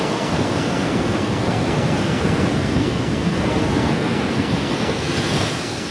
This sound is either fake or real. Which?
fake